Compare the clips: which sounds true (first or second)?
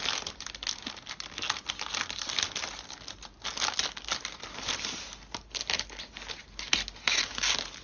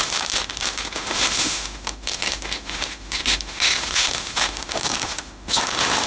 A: first